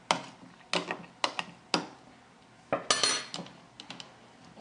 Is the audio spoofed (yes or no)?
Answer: no